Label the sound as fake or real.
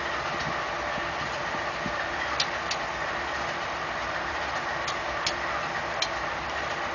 real